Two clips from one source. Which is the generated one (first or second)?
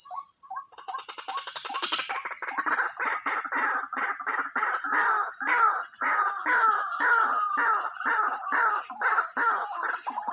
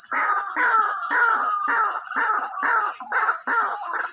first